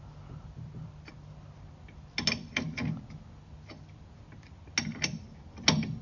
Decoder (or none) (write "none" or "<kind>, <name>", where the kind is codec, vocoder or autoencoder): none